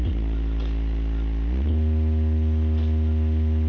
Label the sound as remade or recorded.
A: recorded